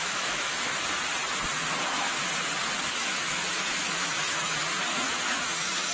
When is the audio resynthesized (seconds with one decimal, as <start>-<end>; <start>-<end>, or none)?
0.0-0.7; 2.9-5.9